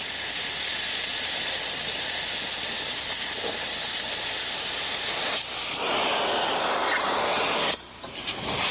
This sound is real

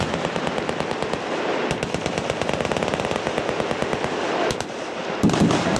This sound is real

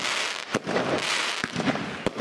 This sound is real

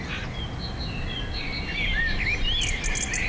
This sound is real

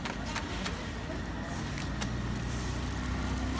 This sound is real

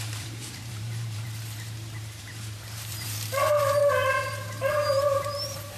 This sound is fake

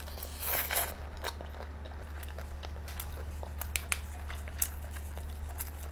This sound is real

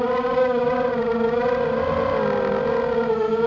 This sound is real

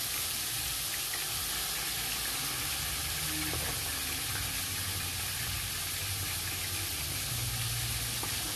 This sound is real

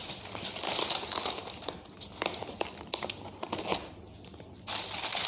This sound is real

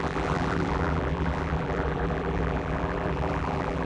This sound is fake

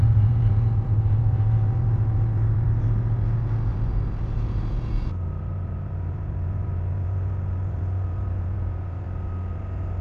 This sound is fake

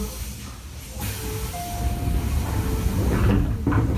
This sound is real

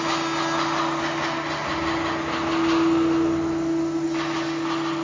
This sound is real